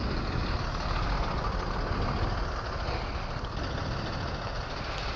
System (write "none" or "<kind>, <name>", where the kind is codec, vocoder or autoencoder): none